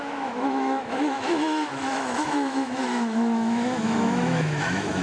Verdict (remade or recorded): remade